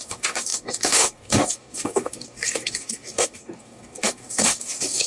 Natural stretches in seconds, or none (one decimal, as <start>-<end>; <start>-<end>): none